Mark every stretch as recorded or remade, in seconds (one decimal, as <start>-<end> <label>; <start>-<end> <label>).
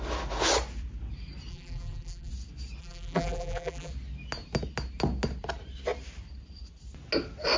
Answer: 0.0-1.5 recorded; 1.5-2.3 remade; 2.3-2.8 recorded; 2.8-3.9 remade; 3.9-7.6 recorded